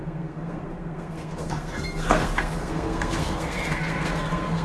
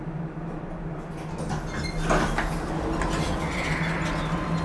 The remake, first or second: first